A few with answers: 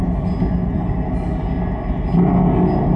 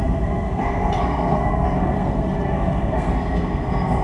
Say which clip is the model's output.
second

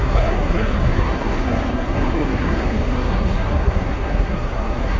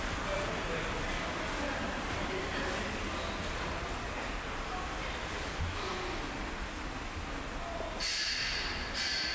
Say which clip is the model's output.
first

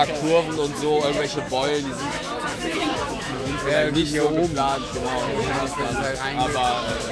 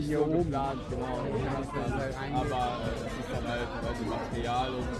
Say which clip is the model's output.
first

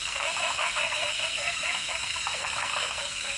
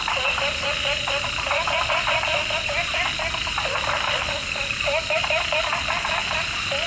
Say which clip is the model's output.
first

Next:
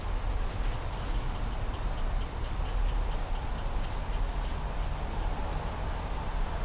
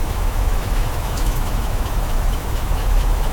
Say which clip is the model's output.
second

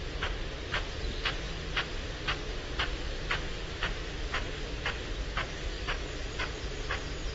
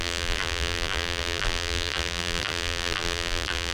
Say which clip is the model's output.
second